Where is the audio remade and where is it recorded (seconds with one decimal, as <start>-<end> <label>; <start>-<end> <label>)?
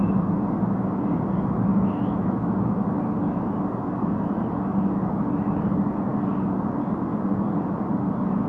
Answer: 0.0-1.7 recorded; 1.7-2.5 remade; 2.5-8.5 recorded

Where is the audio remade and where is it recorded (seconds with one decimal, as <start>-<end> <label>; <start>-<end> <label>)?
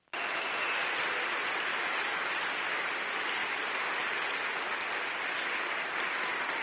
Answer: 0.0-1.7 recorded; 1.7-2.2 remade; 2.2-6.6 recorded